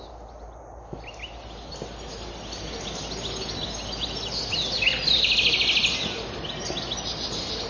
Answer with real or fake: real